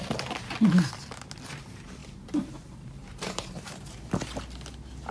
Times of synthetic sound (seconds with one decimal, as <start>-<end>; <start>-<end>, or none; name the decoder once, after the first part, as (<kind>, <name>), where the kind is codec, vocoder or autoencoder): 2.0-4.1 (vocoder, BigVGAN v2)